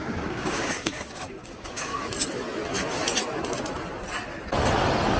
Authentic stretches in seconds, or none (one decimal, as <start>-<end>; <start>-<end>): 1.9-5.2